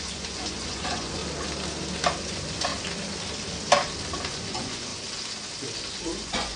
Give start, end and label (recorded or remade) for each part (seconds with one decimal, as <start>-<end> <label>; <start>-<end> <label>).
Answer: 0.0-1.2 remade; 1.2-2.2 recorded; 2.2-2.7 remade; 2.7-4.3 recorded; 4.3-4.9 remade; 4.9-5.9 recorded; 5.9-6.6 remade

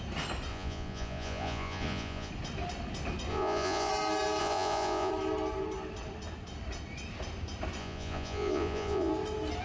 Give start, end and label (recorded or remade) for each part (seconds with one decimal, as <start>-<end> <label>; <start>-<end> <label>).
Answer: 0.0-0.5 recorded; 0.5-2.3 remade; 2.3-3.3 recorded; 3.3-3.9 remade; 3.9-4.4 recorded; 4.4-5.1 remade; 5.1-7.8 recorded; 7.8-9.1 remade; 9.1-9.6 recorded

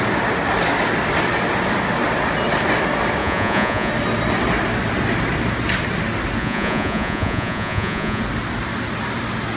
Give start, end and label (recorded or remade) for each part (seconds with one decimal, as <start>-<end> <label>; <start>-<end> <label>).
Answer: 0.0-3.2 recorded; 3.2-3.9 remade; 3.9-6.4 recorded; 6.4-8.2 remade; 8.2-9.6 recorded

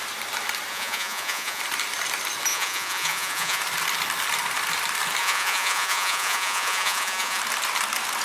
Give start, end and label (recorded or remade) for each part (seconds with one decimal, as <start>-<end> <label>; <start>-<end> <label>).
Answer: 0.0-0.7 recorded; 0.7-1.6 remade; 1.6-2.5 recorded; 2.5-3.6 remade; 3.6-5.2 recorded; 5.2-7.4 remade; 7.4-8.2 recorded

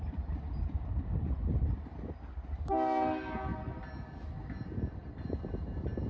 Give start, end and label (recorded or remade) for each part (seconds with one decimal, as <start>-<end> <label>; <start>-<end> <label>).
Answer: 0.0-6.1 recorded

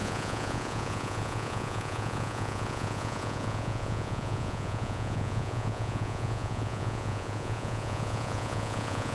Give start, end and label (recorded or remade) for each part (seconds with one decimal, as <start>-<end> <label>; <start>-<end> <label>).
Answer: 0.0-9.1 remade

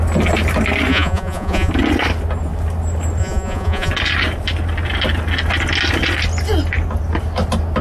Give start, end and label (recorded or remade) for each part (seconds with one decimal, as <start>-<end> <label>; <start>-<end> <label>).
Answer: 0.0-0.9 recorded; 0.9-1.7 remade; 1.7-3.2 recorded; 3.2-3.9 remade; 3.9-7.8 recorded

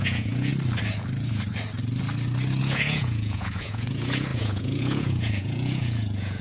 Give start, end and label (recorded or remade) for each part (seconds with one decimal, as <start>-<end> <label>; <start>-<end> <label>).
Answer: 0.0-0.5 remade; 0.5-2.6 recorded; 2.6-6.4 remade